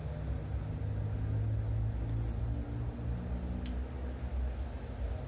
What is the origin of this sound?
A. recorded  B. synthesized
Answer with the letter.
A